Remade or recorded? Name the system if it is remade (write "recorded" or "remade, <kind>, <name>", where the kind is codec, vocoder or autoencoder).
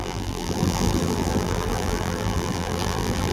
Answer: remade, vocoder, BigVGAN v2